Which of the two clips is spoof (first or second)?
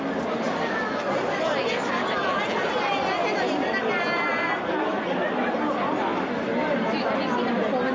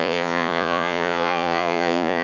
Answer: second